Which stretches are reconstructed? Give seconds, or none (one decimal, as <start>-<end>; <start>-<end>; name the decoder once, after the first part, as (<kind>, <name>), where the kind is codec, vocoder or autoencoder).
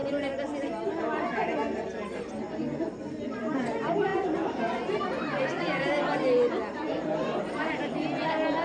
none